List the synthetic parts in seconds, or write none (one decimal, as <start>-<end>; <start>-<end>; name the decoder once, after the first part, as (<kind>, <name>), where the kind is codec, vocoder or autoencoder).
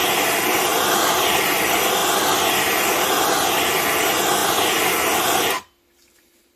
0.7-1.6 (vocoder, BigVGAN v2); 2.0-3.0; 4.4-5.2